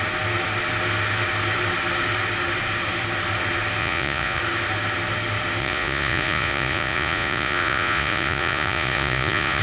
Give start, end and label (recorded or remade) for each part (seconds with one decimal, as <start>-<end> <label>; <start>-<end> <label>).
0.0-3.8 recorded; 3.8-4.4 remade; 4.4-5.6 recorded; 5.6-9.6 remade